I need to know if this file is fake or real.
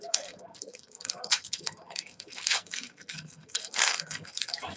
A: fake